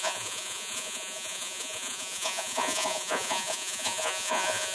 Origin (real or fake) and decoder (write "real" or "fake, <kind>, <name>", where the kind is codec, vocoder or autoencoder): fake, vocoder, Vocos